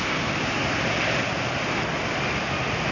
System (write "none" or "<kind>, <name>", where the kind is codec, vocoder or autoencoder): none